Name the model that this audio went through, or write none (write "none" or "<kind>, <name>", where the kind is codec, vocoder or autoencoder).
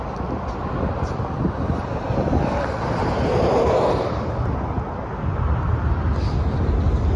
none